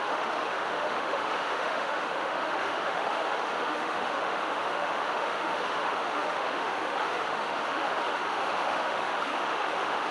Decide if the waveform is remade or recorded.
remade